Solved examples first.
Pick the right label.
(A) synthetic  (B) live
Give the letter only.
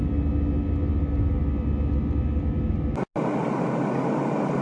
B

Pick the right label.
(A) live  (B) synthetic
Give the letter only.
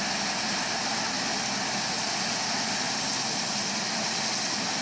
A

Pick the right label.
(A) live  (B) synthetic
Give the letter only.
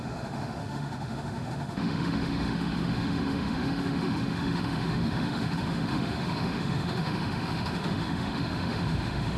B